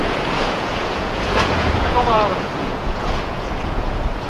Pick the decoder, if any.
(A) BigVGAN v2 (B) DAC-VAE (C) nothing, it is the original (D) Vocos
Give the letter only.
D